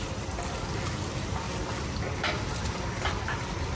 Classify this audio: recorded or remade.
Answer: recorded